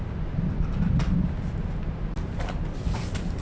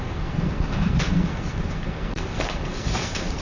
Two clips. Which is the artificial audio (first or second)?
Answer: second